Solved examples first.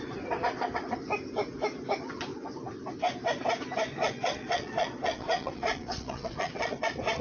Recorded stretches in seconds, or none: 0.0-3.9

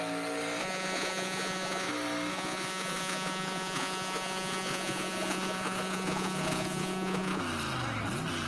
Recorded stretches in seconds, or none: 0.0-0.6; 1.9-2.3; 7.4-8.5

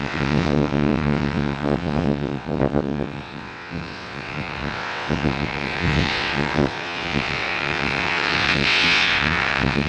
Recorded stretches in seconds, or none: none

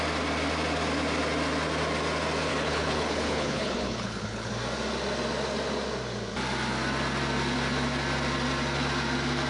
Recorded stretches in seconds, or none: 0.0-2.5; 4.5-9.5